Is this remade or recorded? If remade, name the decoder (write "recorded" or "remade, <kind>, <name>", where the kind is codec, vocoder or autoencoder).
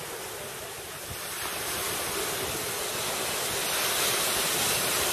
recorded